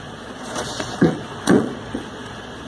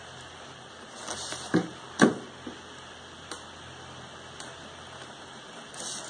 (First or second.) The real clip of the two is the second